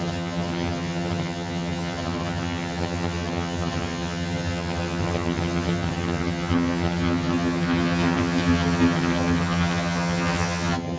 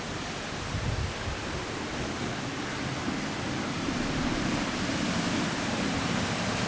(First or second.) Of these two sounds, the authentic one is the second